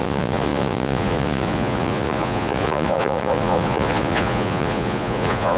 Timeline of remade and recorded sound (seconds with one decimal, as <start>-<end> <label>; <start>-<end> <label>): 0.0-5.6 remade